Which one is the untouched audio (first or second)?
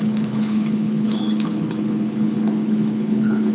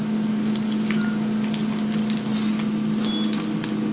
second